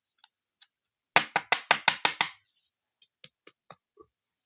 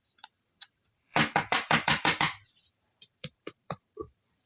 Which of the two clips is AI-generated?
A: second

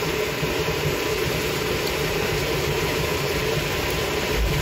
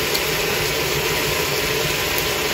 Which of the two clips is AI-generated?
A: first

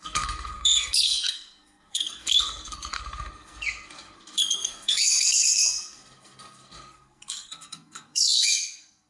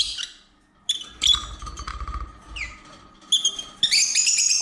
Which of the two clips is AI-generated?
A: first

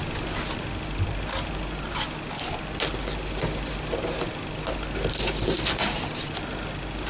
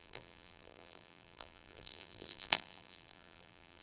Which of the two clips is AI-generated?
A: second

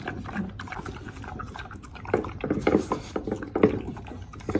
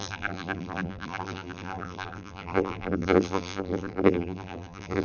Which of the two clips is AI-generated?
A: second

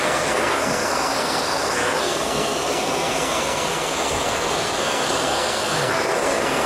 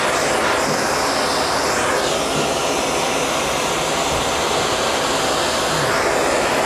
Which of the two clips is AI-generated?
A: first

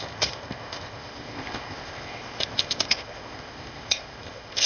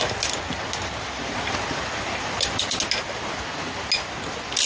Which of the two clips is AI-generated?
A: first